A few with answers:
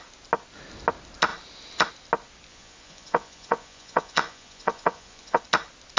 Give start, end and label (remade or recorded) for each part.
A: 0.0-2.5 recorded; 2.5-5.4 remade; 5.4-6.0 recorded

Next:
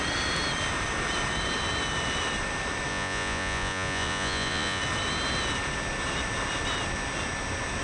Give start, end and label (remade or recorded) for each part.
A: 0.0-2.9 recorded; 2.9-4.8 remade; 4.8-7.8 recorded

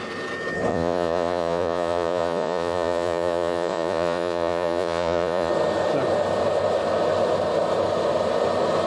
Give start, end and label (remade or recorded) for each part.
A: 0.0-0.7 recorded; 0.7-5.5 remade; 5.5-8.9 recorded

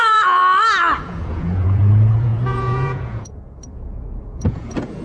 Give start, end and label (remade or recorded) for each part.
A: 0.0-0.4 remade; 0.4-1.0 recorded; 1.0-5.0 remade

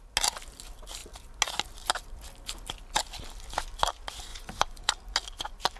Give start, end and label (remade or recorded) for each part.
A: 0.0-4.3 recorded; 4.3-4.9 remade; 4.9-5.8 recorded

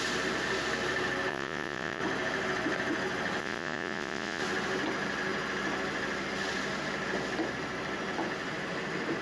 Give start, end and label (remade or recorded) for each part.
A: 0.0-1.3 recorded; 1.3-2.0 remade; 2.0-3.4 recorded; 3.4-4.4 remade; 4.4-9.2 recorded

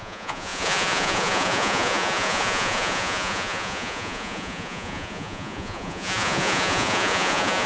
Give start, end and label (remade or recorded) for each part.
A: 0.0-7.7 remade